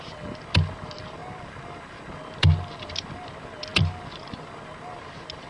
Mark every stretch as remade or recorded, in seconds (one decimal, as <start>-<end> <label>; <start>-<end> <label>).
0.0-5.5 recorded